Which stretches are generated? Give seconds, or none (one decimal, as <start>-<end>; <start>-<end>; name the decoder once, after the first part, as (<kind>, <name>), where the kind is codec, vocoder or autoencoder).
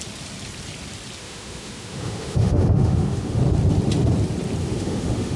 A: 1.2-3.4 (autoencoder, DAC-VAE); 4.6-5.4